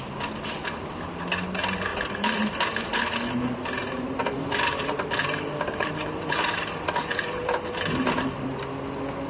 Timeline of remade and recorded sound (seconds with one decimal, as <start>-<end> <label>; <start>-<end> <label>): 0.0-1.9 recorded; 1.9-3.0 remade; 3.0-4.2 recorded; 4.2-8.6 remade; 8.6-9.3 recorded